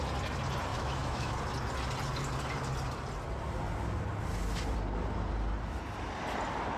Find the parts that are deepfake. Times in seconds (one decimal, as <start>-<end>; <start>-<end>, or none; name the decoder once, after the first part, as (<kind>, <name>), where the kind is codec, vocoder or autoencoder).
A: 0.7-1.4 (autoencoder, DAC-VAE)